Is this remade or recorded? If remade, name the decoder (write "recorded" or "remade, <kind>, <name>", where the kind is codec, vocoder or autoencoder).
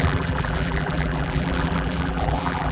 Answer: remade, vocoder, BigVGAN v2